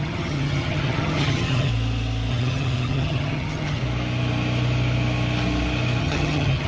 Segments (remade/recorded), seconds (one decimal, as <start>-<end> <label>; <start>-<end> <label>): 0.0-1.7 remade; 1.7-2.3 recorded; 2.3-3.8 remade; 3.8-6.0 recorded; 6.0-6.7 remade